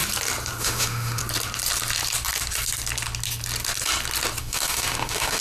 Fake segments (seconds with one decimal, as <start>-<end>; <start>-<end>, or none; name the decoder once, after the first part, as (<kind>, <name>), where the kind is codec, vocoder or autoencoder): 0.6-1.2 (autoencoder, DAC-VAE); 4.4-5.4